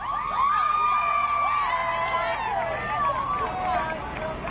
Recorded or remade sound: recorded